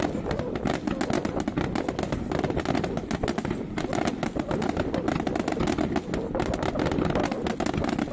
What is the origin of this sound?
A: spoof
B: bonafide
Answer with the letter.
B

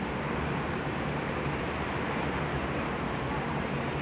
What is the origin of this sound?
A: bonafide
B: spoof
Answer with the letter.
B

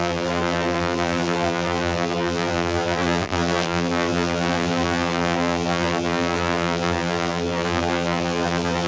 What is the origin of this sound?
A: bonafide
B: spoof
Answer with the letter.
B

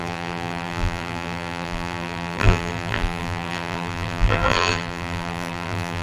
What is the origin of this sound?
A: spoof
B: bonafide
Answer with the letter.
A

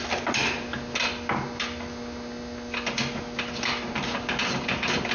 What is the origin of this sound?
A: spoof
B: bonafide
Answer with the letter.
B